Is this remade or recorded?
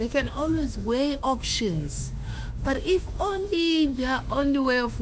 remade